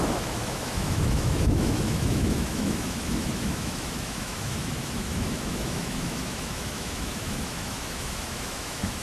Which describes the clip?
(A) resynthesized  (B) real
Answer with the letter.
A